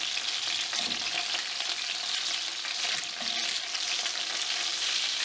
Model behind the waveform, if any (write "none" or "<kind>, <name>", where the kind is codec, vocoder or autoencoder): none